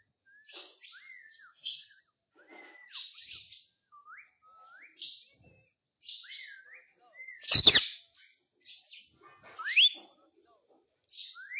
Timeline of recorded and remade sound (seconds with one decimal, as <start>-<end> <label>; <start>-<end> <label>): 0.0-1.5 recorded; 1.5-2.0 remade; 2.0-11.6 recorded